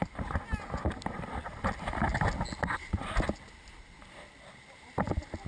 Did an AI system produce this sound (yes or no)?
no